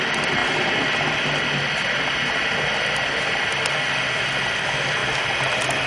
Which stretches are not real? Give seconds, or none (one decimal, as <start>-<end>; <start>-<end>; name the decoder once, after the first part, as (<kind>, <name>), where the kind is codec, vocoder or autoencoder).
none